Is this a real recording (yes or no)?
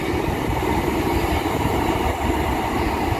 no